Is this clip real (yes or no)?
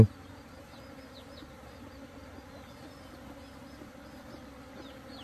yes